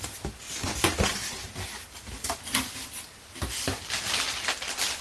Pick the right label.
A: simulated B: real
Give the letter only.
B